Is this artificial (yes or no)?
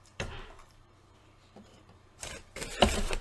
yes